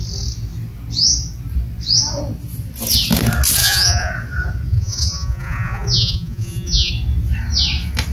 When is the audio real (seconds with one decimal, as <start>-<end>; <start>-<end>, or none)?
0.0-3.6; 4.1-4.7; 6.9-8.1